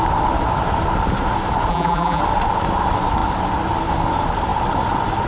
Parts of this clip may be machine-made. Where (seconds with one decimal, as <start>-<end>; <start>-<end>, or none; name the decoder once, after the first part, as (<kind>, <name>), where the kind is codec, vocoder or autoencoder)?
1.7-2.2 (vocoder, BigVGAN v2)